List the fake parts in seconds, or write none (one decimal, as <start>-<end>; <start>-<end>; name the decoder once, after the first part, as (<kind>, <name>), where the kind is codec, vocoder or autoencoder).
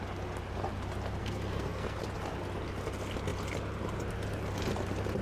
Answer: 1.2-2.0 (codec, SNAC)